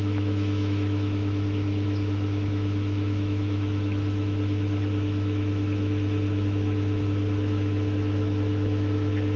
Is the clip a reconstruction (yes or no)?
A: yes